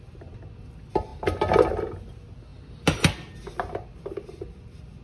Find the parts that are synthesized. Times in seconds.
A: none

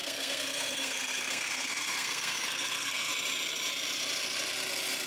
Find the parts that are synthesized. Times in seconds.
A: 0.0-3.1 (codec, SNAC)

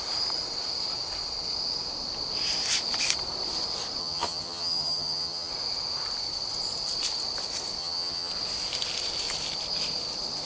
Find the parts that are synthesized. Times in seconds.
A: 4.0-5.5 (vocoder, HiFi-GAN); 7.8-8.3

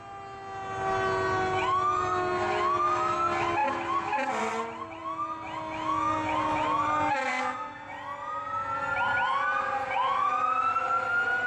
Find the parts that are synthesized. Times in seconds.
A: none

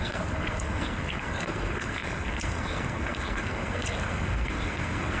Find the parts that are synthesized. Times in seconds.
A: 0.0-5.2 (codec, SNAC)

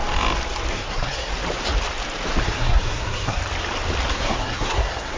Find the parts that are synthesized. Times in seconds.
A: 0.7-1.3 (codec, SNAC); 2.4-3.4; 4.1-5.2

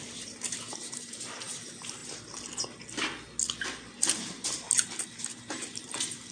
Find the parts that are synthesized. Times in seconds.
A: 0.0-2.0 (vocoder, BigVGAN v2); 4.1-6.3